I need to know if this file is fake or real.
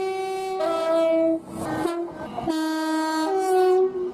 real